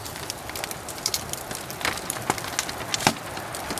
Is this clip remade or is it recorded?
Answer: recorded